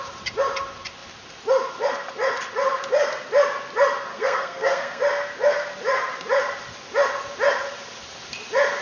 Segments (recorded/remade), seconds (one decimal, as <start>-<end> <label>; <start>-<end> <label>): 0.0-4.1 recorded; 4.1-5.0 remade; 5.0-8.8 recorded